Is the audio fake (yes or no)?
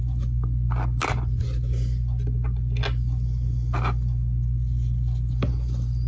no